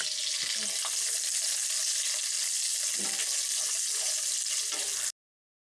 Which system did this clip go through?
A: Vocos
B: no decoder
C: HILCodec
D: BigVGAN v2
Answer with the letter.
B